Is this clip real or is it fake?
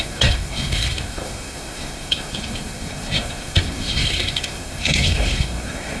fake